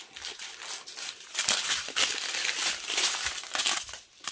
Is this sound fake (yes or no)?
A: no